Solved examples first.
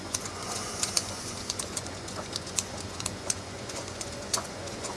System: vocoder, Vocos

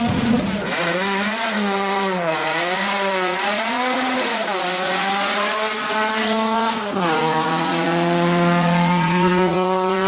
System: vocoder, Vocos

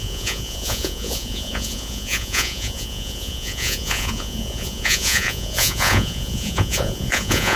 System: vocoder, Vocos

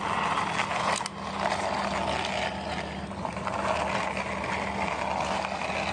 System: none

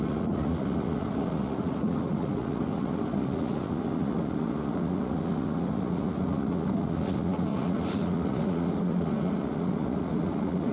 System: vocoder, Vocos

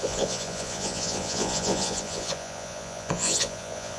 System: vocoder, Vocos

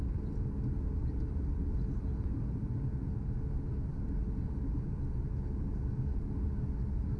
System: none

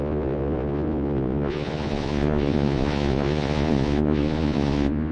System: vocoder, Vocos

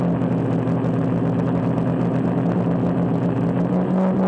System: none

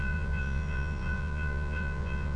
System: vocoder, Vocos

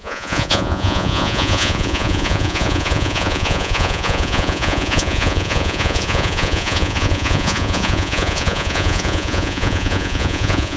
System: vocoder, Vocos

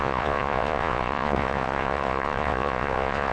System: vocoder, Vocos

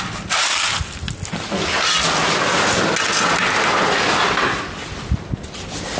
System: none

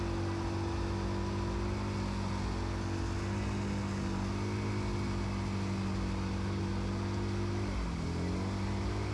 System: none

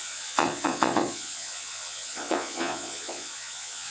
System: vocoder, Vocos